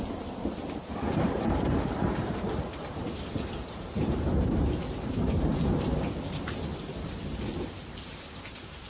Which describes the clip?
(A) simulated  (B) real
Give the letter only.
A